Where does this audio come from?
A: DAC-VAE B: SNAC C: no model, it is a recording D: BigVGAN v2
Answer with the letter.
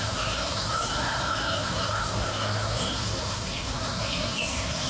B